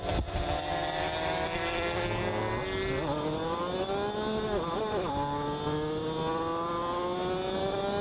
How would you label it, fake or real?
real